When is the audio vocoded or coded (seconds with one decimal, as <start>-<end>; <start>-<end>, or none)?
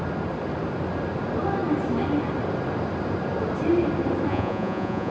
4.3-5.1